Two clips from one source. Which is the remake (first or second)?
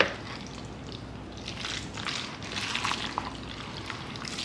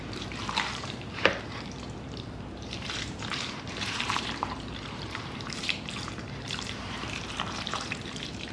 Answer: second